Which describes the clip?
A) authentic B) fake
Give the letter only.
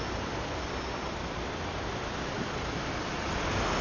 A